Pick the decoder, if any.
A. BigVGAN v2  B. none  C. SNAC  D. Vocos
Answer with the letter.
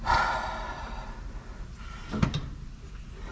B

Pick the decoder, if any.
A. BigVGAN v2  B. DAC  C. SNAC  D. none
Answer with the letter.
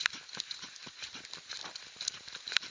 D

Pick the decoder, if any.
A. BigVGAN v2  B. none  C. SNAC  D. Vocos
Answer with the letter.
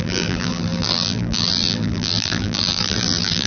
A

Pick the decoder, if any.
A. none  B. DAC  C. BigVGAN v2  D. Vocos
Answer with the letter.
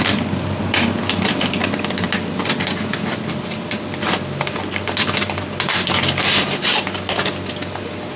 A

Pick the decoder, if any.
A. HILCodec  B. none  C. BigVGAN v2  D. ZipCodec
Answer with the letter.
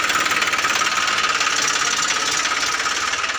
B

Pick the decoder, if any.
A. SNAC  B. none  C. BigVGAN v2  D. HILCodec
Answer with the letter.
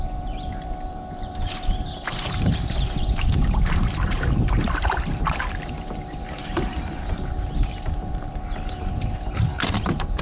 C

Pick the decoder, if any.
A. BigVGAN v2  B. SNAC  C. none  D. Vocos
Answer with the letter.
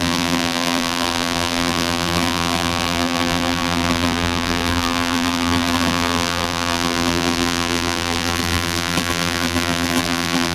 A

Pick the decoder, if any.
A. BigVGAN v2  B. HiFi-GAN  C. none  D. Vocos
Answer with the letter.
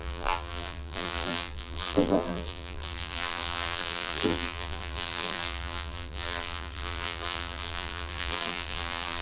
A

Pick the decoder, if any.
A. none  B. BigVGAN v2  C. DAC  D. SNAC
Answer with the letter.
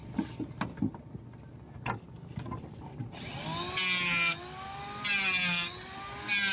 A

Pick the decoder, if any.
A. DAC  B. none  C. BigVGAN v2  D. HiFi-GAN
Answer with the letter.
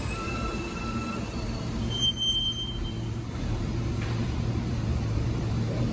C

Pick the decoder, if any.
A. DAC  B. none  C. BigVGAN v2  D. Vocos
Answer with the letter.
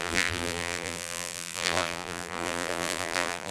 C